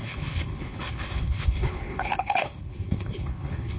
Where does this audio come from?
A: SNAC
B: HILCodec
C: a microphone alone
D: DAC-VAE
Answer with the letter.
B